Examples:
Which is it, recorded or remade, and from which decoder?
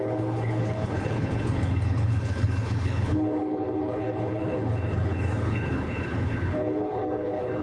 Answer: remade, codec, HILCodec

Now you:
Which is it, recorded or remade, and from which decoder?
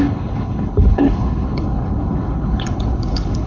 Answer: remade, codec, HILCodec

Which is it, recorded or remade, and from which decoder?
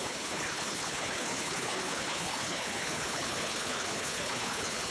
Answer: remade, codec, HILCodec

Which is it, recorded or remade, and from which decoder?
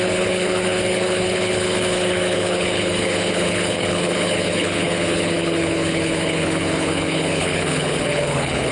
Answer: remade, codec, HILCodec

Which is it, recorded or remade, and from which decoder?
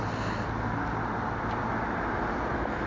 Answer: recorded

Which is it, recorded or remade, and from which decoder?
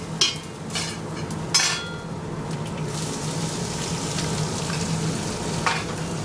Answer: recorded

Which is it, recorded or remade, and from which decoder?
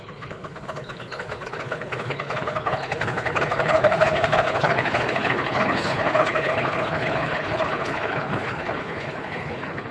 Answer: remade, codec, HILCodec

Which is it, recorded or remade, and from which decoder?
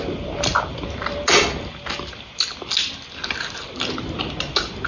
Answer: recorded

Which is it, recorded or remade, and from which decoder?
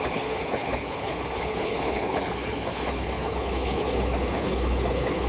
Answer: remade, codec, HILCodec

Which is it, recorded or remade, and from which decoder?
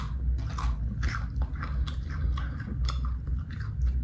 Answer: recorded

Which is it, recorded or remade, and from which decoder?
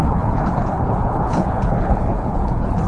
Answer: remade, codec, HILCodec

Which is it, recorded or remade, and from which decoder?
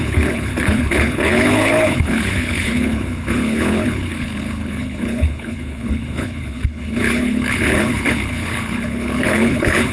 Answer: remade, codec, HILCodec